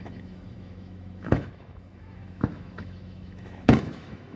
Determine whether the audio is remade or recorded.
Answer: remade